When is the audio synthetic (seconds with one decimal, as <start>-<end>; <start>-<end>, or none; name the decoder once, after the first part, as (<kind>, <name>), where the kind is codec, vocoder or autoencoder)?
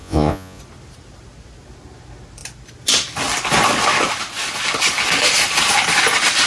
0.0-0.6 (vocoder, Vocos)